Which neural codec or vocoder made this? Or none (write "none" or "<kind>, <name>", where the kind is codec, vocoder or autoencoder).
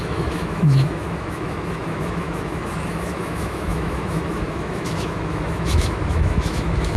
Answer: autoencoder, DAC-VAE